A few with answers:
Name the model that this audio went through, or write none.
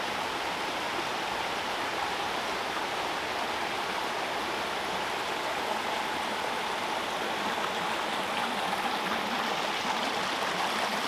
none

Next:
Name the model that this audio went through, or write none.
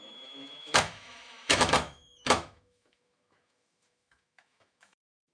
autoencoder, DAC-VAE